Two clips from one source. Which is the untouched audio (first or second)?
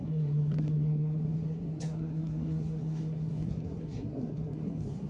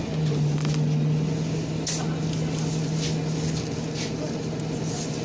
second